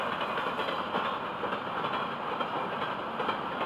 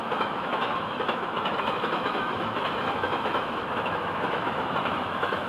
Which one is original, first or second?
first